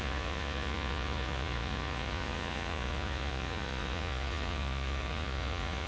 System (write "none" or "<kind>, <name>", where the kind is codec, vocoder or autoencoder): vocoder, Vocos